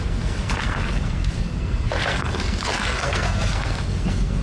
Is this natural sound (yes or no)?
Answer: no